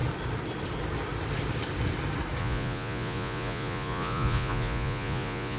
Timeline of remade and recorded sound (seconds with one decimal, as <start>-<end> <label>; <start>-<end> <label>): 0.0-2.4 recorded; 2.4-5.6 remade